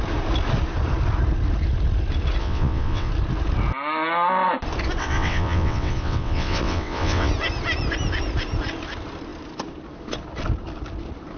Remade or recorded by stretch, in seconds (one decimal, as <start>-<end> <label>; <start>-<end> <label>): 0.0-2.4 recorded; 2.4-3.1 remade; 3.1-5.0 recorded; 5.0-7.3 remade; 7.3-11.4 recorded